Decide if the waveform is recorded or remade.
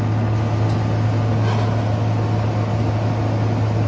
recorded